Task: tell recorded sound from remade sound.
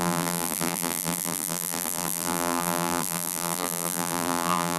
remade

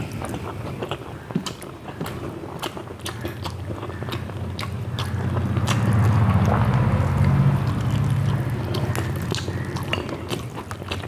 recorded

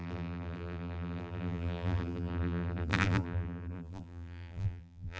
remade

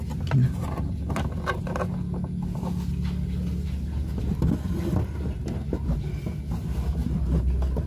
recorded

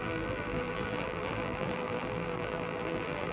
remade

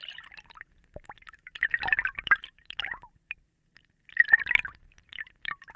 remade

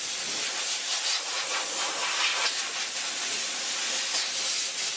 recorded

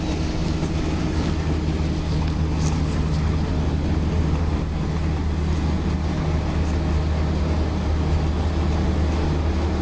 recorded